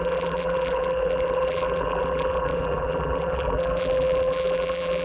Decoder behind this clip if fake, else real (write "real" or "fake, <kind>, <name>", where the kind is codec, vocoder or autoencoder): fake, vocoder, BigVGAN v2